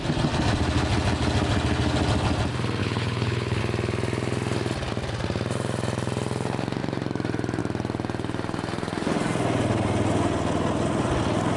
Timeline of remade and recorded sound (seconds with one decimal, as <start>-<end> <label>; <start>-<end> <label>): 0.0-2.8 recorded; 2.8-3.6 remade; 3.6-11.6 recorded

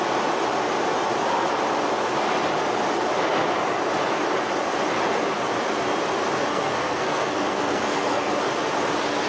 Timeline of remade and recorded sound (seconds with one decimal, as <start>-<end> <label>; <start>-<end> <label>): 0.0-6.5 recorded; 6.5-8.3 remade; 8.3-9.3 recorded